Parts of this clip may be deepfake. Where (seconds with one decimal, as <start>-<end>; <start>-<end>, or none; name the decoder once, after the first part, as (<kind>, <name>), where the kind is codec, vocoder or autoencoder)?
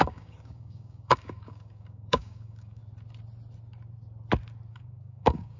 0.0-2.8 (codec, DAC); 4.7-5.6